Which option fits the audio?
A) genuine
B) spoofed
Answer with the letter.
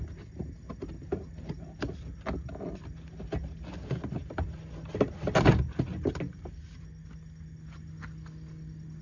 A